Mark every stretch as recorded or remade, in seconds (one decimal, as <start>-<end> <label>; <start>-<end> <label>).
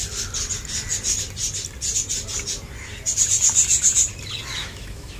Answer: 0.0-4.6 recorded; 4.6-5.2 remade